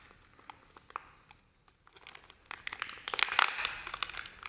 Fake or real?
real